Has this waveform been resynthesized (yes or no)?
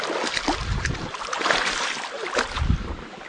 no